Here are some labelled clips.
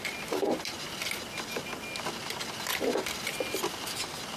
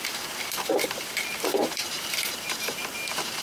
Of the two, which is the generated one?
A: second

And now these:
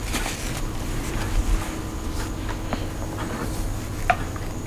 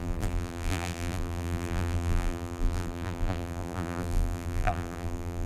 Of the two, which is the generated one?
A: second